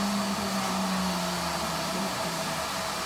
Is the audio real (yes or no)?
yes